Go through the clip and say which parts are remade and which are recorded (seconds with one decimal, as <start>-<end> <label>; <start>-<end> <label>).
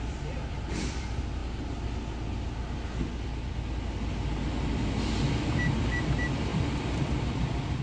0.0-1.4 remade; 1.4-6.0 recorded; 6.0-7.8 remade